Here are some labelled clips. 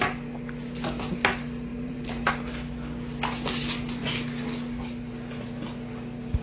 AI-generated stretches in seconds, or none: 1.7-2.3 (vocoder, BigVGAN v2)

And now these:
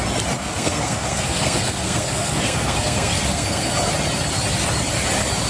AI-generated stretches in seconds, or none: 0.4-3.7 (codec, SNAC)

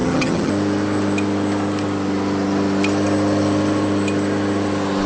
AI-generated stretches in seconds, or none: 0.0-0.5 (vocoder, HiFi-GAN)

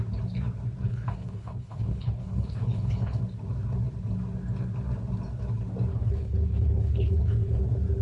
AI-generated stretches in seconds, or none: 0.8-3.2 (codec, HILCodec); 5.9-7.6

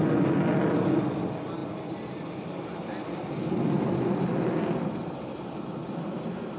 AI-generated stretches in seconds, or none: none

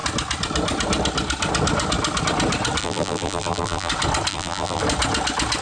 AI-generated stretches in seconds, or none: 2.8-3.9 (vocoder, BigVGAN v2); 4.3-4.8